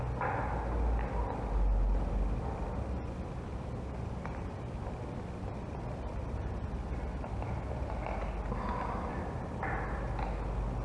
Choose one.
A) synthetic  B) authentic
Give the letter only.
B